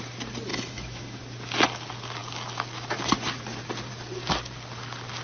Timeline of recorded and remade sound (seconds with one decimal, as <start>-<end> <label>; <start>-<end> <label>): 0.0-0.5 recorded; 0.5-1.2 remade; 1.2-5.2 recorded